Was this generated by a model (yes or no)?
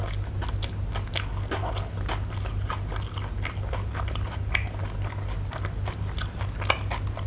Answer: no